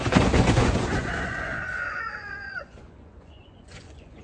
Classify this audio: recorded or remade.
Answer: remade